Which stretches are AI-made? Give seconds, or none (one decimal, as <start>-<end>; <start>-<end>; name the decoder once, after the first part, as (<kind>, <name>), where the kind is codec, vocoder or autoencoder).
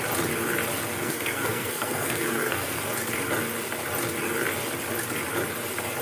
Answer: 0.9-2.8 (codec, SNAC)